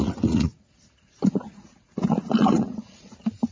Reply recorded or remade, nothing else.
remade